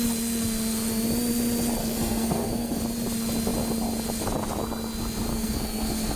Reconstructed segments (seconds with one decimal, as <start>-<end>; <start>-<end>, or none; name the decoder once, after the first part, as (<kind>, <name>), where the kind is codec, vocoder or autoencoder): 1.8-2.8 (codec, SNAC); 5.3-6.2